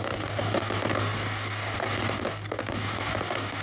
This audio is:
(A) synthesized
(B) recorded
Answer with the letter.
A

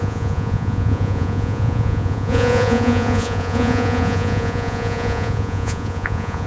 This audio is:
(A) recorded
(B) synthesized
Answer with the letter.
B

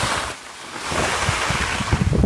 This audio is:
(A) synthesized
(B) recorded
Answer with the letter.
B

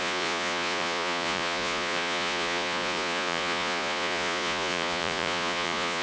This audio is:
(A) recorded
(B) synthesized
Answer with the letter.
B